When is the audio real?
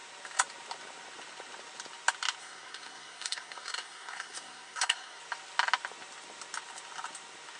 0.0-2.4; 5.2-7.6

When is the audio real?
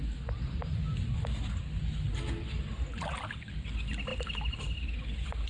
0.0-5.5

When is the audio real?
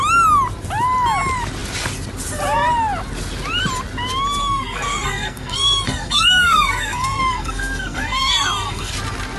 0.0-4.4; 8.9-9.4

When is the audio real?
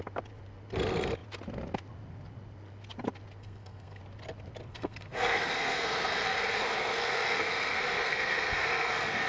0.0-3.4; 4.0-4.7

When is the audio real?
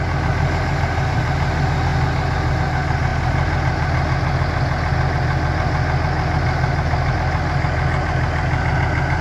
0.0-9.2